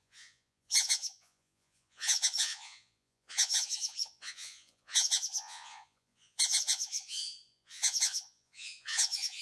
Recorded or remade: remade